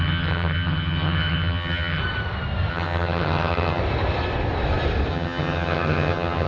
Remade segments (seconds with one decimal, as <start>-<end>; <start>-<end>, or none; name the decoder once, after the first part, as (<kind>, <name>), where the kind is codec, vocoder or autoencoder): 0.0-2.0 (vocoder, HiFi-GAN); 2.7-3.8; 5.1-6.5

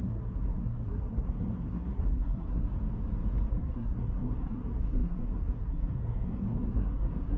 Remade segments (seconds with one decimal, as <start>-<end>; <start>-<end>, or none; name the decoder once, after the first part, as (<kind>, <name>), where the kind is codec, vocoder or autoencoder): 0.0-2.8 (codec, SNAC); 3.5-7.4

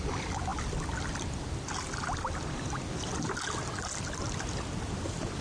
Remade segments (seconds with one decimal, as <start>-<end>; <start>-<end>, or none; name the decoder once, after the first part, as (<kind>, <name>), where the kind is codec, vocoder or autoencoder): none

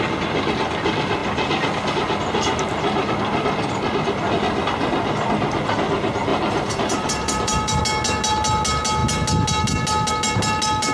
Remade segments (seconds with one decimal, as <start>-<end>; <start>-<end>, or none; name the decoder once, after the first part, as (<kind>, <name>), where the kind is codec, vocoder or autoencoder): 6.3-7.8 (vocoder, BigVGAN v2)

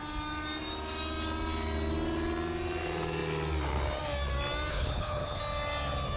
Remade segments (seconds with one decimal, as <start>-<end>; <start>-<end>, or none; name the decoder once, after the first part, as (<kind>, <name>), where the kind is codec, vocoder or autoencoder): 4.7-5.4 (codec, HILCodec)